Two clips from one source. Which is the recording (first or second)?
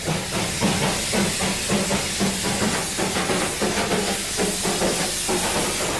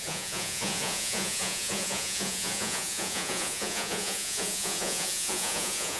first